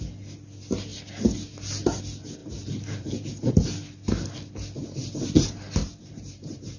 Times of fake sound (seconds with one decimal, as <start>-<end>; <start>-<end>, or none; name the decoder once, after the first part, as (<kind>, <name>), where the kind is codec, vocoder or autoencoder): 2.4-3.5 (vocoder, BigVGAN v2); 5.8-6.8